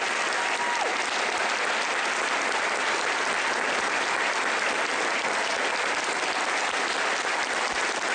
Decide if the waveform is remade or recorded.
recorded